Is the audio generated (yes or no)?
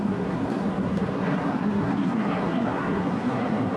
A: yes